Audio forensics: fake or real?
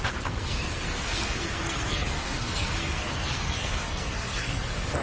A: fake